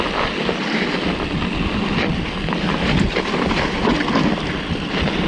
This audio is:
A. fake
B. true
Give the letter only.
B